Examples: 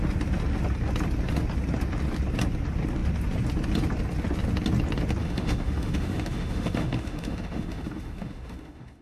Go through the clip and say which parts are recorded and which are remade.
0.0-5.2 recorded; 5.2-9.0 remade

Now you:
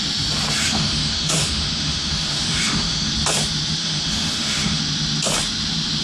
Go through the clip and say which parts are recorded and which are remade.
0.0-0.6 recorded; 0.6-3.1 remade; 3.1-3.8 recorded; 3.8-4.8 remade; 4.8-6.0 recorded

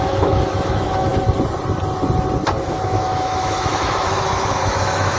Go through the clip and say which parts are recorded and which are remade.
0.0-1.1 remade; 1.1-2.7 recorded; 2.7-5.2 remade

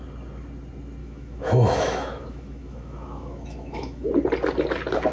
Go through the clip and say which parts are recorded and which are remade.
0.0-1.0 recorded; 1.0-4.1 remade; 4.1-5.1 recorded

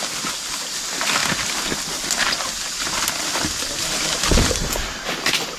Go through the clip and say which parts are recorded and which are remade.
0.0-5.6 recorded